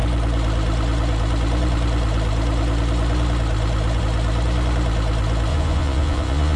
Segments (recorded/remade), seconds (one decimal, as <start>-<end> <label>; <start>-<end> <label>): 0.0-5.5 recorded; 5.5-6.6 remade